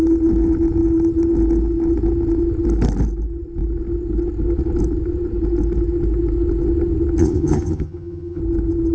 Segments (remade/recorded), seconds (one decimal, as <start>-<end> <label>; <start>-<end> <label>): 0.0-7.2 recorded; 7.2-8.4 remade; 8.4-8.9 recorded